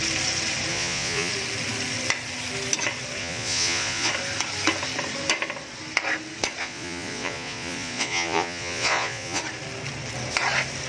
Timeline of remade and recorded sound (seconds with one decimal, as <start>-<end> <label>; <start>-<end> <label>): 0.0-0.7 recorded; 0.7-1.3 remade; 1.3-3.2 recorded; 3.2-4.1 remade; 4.1-6.6 recorded; 6.6-9.4 remade; 9.4-10.9 recorded